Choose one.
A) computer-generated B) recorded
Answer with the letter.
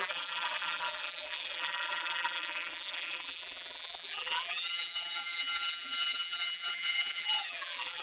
A